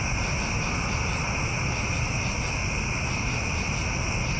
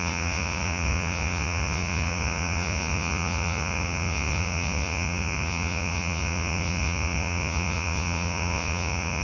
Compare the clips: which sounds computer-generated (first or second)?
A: second